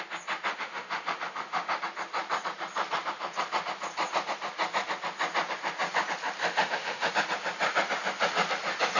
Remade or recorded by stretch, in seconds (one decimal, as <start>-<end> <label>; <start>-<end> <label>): 0.0-0.5 recorded; 0.5-1.8 remade; 1.8-6.4 recorded; 6.4-7.1 remade; 7.1-9.0 recorded